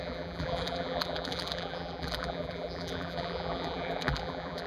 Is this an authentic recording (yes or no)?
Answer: no